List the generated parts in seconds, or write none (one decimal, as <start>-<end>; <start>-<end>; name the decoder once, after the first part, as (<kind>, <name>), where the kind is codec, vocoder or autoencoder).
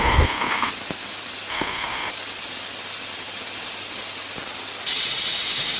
0.0-0.7 (codec, SNAC); 1.5-2.1